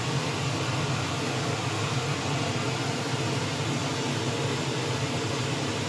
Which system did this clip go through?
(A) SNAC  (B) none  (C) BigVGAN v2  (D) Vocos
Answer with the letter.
B